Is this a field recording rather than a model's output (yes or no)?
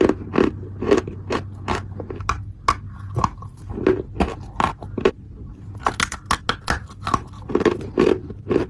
yes